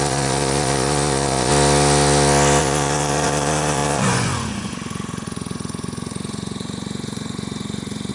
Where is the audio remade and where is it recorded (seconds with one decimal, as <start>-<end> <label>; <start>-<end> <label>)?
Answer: 0.0-1.5 remade; 1.5-2.6 recorded; 2.6-8.1 remade